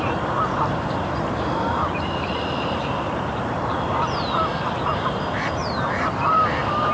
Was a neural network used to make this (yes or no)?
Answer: yes